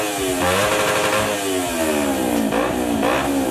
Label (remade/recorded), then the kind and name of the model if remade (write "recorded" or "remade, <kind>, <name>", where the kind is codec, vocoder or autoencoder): recorded